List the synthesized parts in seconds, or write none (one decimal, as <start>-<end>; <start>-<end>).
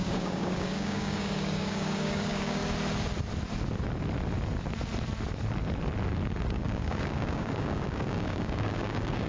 0.0-2.6; 6.5-9.3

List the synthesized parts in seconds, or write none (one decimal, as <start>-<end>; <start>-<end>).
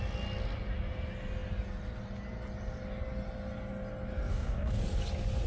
4.3-4.8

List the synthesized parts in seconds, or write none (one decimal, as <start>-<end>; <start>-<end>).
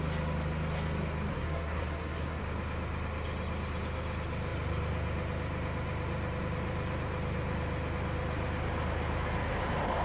1.3-2.4